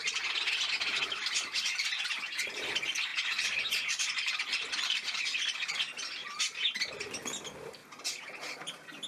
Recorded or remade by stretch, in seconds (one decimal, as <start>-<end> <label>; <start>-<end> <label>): 0.0-3.1 recorded; 3.1-5.2 remade; 5.2-6.2 recorded; 6.2-6.8 remade; 6.8-9.1 recorded